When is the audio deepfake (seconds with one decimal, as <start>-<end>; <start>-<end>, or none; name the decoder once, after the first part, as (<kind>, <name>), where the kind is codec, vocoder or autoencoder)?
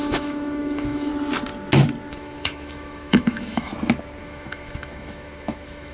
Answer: 0.0-1.1 (autoencoder, DAC-VAE); 2.1-3.7; 4.2-5.9